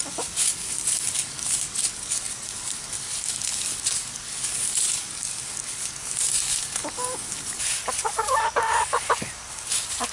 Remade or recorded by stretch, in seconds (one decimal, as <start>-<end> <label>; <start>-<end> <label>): 0.0-10.1 remade